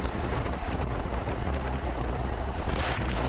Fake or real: fake